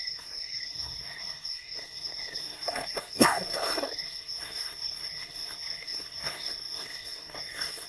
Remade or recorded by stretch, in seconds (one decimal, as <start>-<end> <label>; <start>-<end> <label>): 0.0-7.9 remade